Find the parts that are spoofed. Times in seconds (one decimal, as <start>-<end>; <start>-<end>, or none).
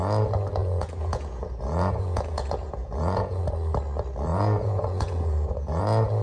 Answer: 0.6-3.4; 4.3-5.8